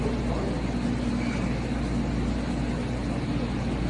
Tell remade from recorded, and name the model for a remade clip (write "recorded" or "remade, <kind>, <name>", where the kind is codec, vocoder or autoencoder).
recorded